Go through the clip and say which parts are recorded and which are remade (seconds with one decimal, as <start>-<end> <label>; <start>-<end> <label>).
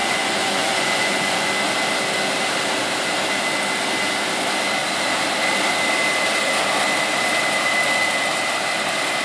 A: 0.0-1.5 remade; 1.5-9.2 recorded